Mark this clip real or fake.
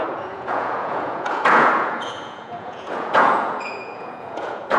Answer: fake